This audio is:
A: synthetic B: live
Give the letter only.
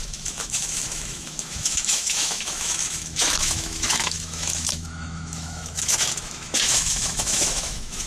A